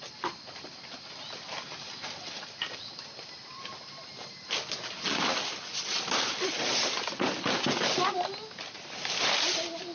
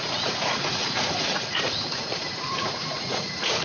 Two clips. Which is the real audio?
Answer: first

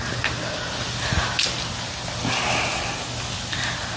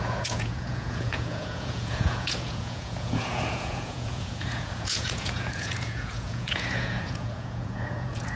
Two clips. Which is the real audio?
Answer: first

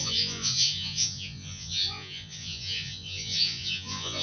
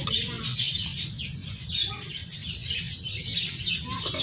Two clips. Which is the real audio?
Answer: second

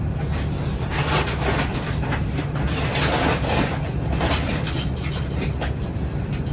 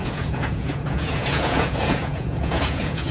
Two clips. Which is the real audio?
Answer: first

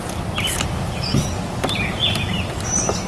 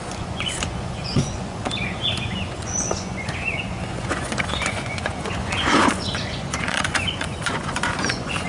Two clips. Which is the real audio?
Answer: first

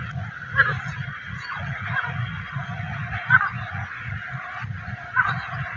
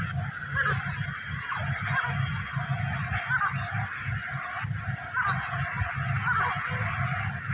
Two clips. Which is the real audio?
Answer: second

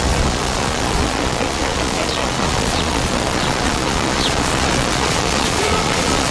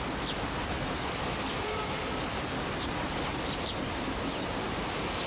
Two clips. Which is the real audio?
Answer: second